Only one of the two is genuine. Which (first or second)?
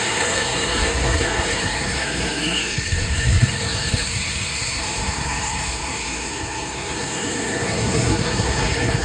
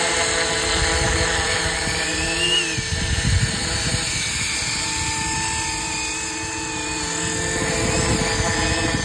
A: second